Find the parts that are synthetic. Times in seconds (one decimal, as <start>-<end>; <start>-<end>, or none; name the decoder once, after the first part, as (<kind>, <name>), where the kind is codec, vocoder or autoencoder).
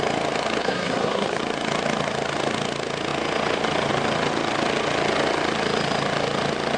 0.6-1.4 (codec, SNAC)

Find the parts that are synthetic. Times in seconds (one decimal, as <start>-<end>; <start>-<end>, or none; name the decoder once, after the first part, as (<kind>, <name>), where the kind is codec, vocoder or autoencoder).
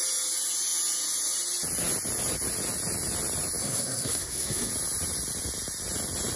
3.6-4.7 (codec, SNAC)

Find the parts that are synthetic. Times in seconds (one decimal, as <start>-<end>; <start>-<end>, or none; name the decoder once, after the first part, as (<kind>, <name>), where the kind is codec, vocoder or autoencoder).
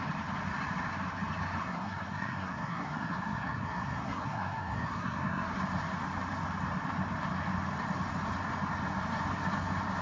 1.6-5.6 (codec, SNAC)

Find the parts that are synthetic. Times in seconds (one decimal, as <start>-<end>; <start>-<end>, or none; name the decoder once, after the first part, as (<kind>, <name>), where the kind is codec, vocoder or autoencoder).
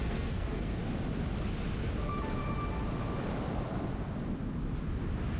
0.0-0.8 (codec, SNAC)